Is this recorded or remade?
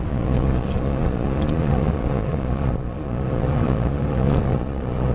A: remade